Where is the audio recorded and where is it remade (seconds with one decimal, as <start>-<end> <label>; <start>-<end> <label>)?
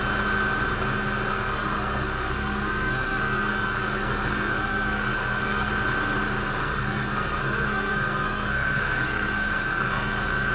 0.0-1.3 recorded; 1.3-5.7 remade; 5.7-6.6 recorded; 6.6-10.5 remade